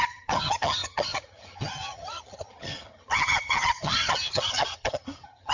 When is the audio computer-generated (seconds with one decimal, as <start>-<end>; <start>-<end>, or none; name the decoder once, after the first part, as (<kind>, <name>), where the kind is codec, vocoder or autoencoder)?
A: 0.0-5.5 (vocoder, HiFi-GAN)